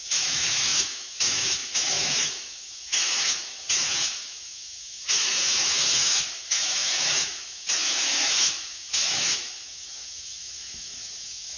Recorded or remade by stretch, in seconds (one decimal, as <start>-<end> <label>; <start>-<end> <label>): 0.0-11.6 remade